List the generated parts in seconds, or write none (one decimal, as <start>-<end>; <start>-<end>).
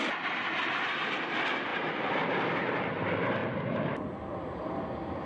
0.0-5.3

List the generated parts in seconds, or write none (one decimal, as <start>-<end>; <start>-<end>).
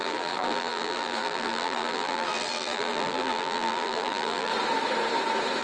0.0-4.5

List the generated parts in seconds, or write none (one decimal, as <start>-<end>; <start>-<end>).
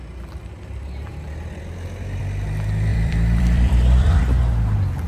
1.1-2.2; 2.9-4.2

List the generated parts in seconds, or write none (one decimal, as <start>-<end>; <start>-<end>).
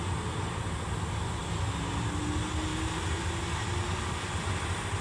none